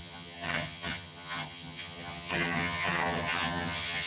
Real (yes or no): no